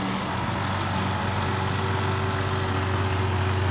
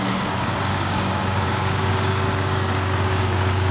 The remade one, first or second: second